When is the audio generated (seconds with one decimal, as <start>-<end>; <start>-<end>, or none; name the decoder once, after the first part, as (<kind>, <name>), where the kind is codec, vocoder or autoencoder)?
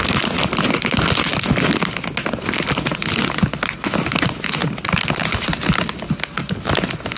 none